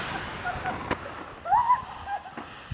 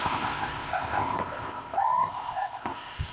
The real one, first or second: first